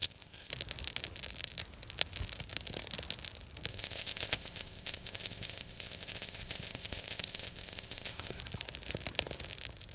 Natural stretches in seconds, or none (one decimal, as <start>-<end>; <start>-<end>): 0.5-3.7; 8.4-9.9